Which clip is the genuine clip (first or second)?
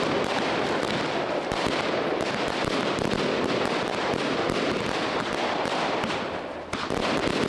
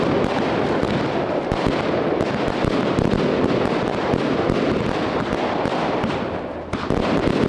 second